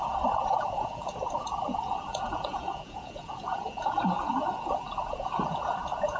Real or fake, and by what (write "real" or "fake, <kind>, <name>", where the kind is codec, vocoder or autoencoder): fake, vocoder, Vocos